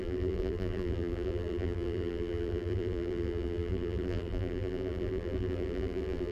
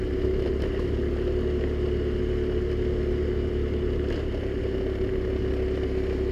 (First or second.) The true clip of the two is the second